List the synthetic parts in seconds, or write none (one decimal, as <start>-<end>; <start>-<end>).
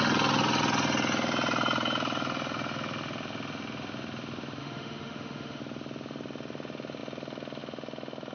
4.6-5.6